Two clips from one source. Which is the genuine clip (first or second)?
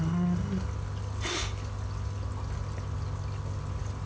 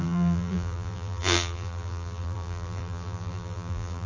first